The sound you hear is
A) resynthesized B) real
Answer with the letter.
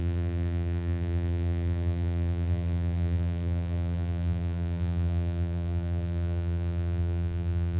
A